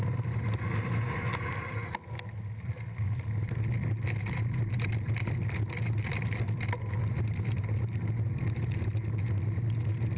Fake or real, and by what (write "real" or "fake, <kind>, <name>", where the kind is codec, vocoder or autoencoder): real